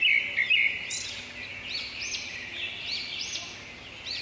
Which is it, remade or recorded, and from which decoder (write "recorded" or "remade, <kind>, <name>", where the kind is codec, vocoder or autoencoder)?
recorded